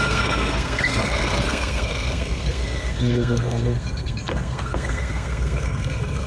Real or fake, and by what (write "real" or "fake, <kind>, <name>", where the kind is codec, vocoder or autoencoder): fake, codec, SNAC